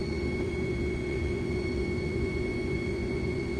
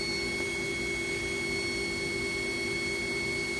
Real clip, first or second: second